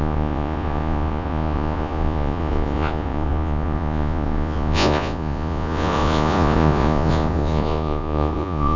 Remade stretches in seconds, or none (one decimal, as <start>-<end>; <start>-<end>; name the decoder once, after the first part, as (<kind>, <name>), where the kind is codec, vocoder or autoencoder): 0.0-8.8 (vocoder, Vocos)